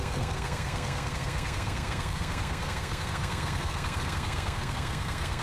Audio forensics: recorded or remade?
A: remade